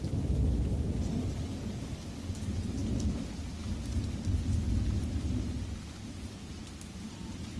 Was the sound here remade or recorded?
recorded